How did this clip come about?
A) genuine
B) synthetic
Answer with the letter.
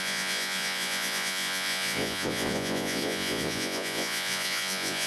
B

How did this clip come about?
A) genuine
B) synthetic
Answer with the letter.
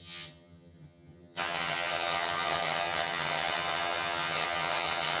B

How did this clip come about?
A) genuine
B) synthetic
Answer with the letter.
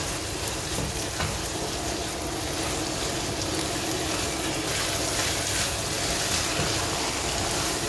A